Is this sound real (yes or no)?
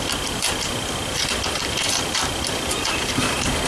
yes